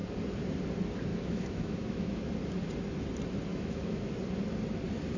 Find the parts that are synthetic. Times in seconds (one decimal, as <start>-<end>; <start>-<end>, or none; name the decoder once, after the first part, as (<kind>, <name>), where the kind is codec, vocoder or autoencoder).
1.1-2.3 (autoencoder, DAC-VAE); 3.5-4.0